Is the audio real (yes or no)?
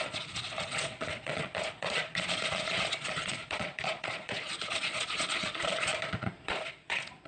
no